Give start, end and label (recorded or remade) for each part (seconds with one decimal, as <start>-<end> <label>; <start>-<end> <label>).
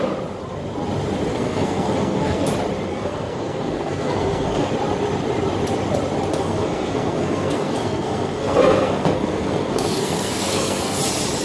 0.0-1.3 recorded; 1.3-2.5 remade; 2.5-2.9 recorded; 2.9-4.7 remade; 4.7-6.3 recorded; 6.3-11.0 remade; 11.0-11.4 recorded